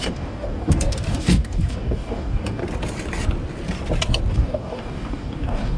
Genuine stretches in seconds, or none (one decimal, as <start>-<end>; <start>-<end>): 2.6-4.3